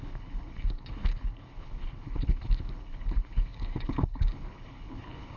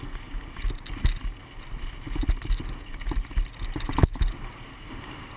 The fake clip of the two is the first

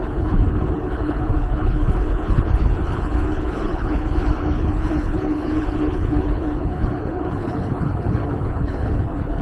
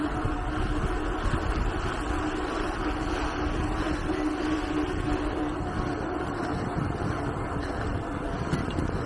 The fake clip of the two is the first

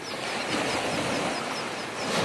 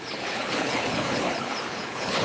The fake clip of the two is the second